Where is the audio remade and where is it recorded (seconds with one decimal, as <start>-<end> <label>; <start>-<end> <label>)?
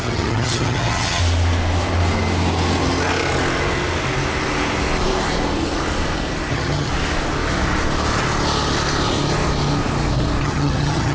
0.0-1.2 remade; 1.2-6.5 recorded; 6.5-6.9 remade; 6.9-10.4 recorded; 10.4-11.1 remade